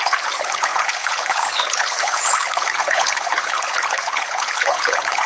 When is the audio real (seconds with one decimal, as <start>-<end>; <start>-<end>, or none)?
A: none